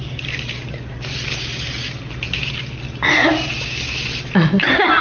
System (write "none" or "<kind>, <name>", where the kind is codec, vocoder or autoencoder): none